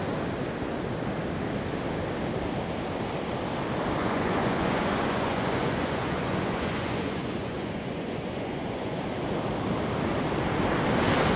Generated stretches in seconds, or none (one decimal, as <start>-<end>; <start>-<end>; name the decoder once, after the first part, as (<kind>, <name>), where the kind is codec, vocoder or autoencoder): 4.0-9.0 (vocoder, Vocos)